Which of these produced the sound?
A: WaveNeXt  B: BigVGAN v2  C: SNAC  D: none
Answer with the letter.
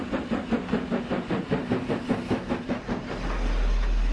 D